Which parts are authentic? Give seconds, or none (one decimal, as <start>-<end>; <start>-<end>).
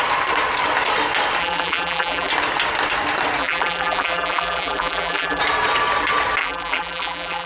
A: 0.0-1.4; 2.3-3.4; 5.4-6.4